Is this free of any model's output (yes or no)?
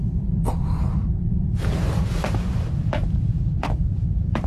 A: no